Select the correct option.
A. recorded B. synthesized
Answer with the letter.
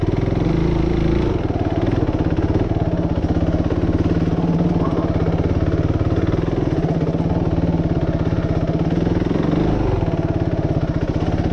A